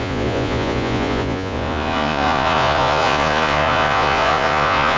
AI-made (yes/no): yes